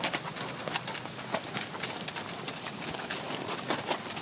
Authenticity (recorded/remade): recorded